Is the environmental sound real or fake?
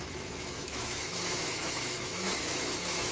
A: fake